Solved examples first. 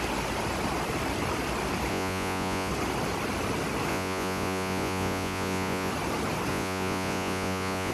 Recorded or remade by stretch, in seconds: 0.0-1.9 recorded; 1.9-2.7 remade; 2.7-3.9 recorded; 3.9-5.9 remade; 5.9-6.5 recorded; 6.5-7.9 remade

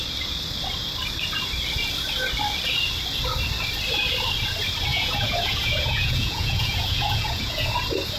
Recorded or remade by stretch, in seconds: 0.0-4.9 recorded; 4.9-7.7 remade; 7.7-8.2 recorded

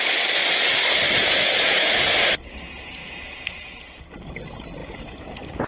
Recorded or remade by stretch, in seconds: 0.0-1.2 recorded; 1.2-1.9 remade; 1.9-3.0 recorded; 3.0-4.0 remade; 4.0-4.8 recorded; 4.8-5.7 remade